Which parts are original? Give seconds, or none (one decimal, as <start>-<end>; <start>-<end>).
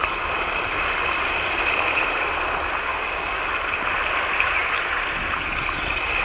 0.0-2.9; 3.5-6.2